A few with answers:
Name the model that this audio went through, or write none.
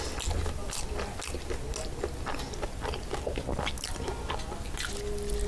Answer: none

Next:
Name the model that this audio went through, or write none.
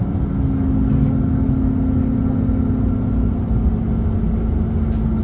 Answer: none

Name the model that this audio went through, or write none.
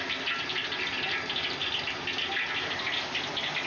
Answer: none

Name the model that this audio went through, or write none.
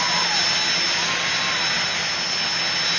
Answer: none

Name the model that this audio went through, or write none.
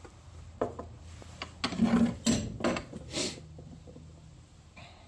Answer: none